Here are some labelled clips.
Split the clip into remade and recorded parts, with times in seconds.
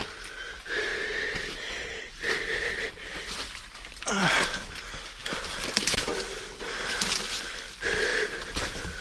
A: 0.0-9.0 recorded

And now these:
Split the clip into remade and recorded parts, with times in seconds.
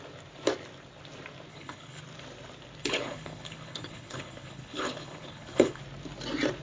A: 0.0-1.5 recorded; 1.5-2.0 remade; 2.0-2.8 recorded; 2.8-5.8 remade; 5.8-6.6 recorded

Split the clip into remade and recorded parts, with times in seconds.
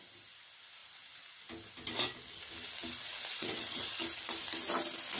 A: 0.0-3.3 recorded; 3.3-4.0 remade; 4.0-5.2 recorded